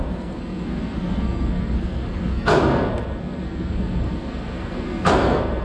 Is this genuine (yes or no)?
no